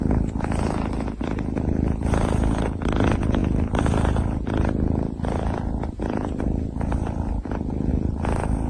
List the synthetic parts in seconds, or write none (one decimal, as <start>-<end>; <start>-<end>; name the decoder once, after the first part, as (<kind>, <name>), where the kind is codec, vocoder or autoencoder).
none